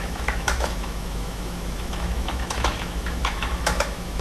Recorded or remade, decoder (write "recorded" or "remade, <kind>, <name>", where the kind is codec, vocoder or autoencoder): remade, autoencoder, DAC-VAE